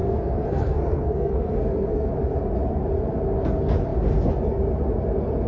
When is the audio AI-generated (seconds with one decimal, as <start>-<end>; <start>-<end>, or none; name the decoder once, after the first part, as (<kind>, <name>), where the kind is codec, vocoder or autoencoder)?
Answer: 0.0-2.1 (codec, SNAC)